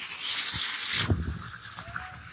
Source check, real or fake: real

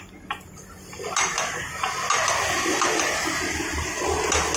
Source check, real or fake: real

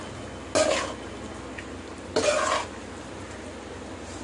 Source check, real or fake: real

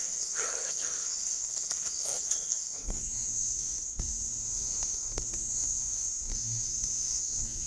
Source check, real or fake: fake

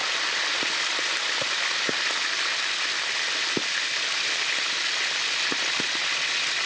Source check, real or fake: real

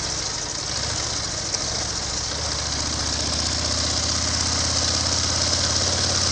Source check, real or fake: real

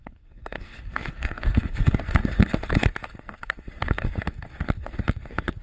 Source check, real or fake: fake